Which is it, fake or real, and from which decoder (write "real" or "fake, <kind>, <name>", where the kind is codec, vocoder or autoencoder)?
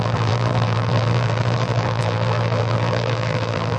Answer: fake, vocoder, BigVGAN v2